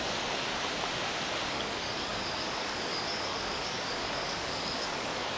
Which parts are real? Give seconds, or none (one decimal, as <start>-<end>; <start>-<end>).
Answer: 0.5-1.5